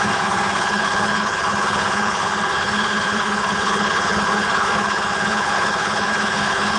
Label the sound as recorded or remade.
remade